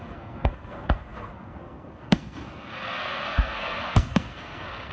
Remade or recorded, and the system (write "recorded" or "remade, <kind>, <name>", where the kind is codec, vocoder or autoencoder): remade, codec, SNAC